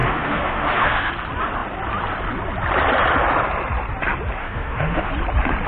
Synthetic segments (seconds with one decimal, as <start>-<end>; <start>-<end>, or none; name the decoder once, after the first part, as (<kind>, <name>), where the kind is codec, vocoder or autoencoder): 0.0-1.1 (autoencoder, DAC-VAE); 4.4-5.1